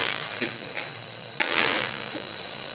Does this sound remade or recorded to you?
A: remade